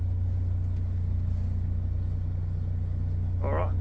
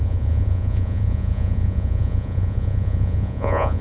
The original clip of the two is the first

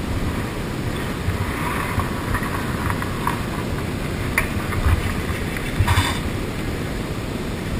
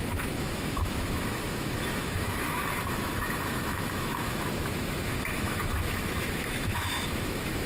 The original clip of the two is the first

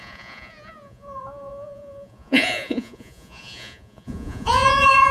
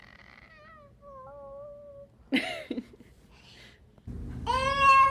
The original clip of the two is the second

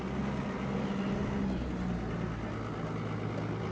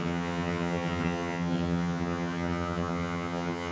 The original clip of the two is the first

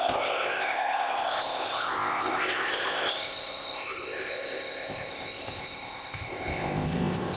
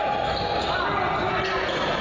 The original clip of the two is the second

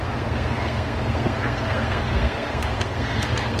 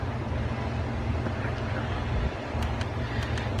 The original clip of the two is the second